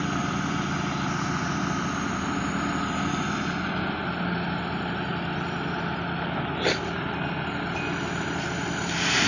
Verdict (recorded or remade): recorded